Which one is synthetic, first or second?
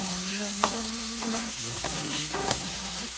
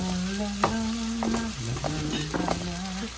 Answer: first